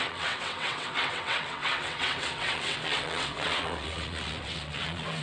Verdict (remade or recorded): remade